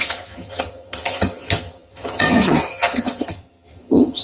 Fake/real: fake